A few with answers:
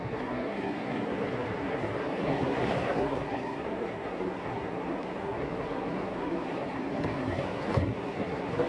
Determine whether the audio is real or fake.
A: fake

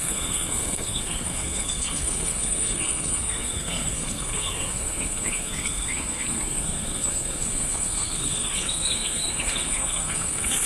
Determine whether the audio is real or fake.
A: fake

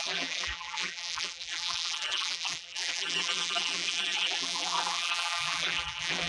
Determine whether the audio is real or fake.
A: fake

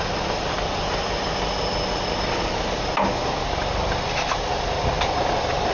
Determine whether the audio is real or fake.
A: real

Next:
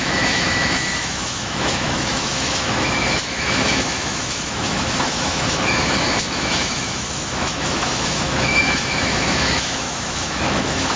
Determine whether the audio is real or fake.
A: fake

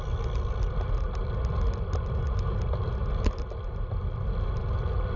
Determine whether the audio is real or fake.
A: real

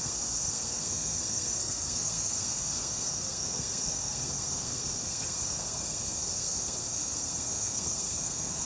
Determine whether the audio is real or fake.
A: fake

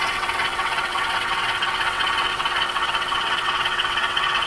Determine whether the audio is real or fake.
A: fake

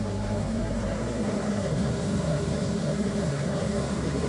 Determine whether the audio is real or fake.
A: fake